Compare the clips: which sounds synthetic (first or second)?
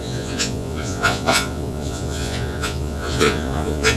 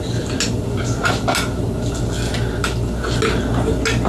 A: first